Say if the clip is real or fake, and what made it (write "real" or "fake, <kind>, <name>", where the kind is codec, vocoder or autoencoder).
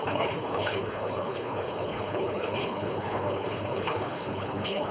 fake, codec, HILCodec